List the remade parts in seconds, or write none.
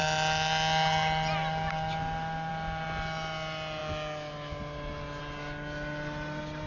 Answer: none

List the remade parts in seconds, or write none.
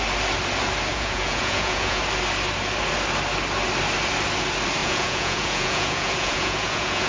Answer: 0.9-2.0 (vocoder, Vocos); 4.8-7.1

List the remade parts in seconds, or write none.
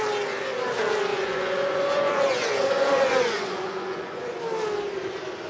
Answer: 1.1-4.4 (vocoder, Vocos)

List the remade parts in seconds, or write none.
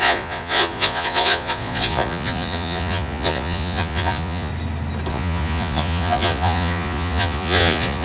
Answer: 0.0-4.5 (vocoder, Vocos); 5.1-8.0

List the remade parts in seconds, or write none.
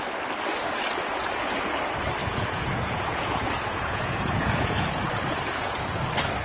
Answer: 2.2-6.0 (vocoder, Vocos)